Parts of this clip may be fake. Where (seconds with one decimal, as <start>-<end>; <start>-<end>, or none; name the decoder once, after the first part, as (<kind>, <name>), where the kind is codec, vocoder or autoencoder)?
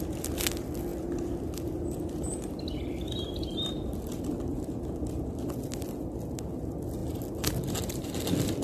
none